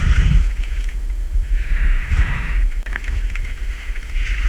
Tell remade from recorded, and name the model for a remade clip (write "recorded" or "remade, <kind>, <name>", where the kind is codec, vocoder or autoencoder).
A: remade, autoencoder, DAC-VAE